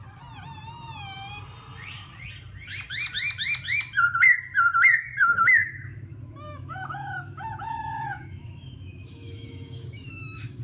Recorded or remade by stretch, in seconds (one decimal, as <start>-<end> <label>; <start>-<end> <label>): 0.0-5.2 recorded; 5.2-10.6 remade